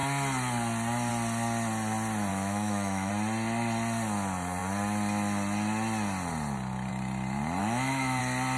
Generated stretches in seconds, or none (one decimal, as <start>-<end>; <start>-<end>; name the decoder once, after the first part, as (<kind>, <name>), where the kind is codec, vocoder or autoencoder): 2.3-3.1 (autoencoder, DAC-VAE); 7.6-8.2